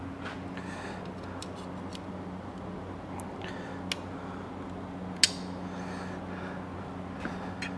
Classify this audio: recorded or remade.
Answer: recorded